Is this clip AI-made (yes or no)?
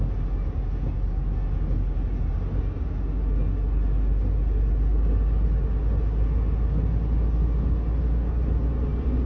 no